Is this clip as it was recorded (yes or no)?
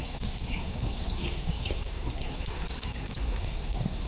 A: no